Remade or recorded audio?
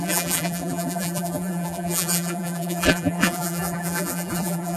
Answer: remade